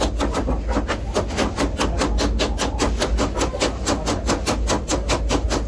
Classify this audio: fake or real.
real